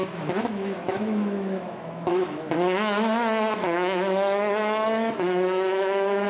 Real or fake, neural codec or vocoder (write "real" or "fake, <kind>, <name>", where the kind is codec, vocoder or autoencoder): fake, autoencoder, DAC-VAE